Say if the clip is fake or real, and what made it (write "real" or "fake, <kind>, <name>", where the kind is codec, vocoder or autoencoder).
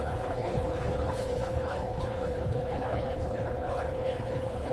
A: fake, codec, HILCodec